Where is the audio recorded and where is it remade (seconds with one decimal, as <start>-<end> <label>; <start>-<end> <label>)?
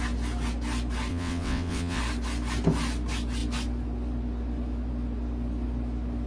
0.0-1.1 recorded; 1.1-2.0 remade; 2.0-6.3 recorded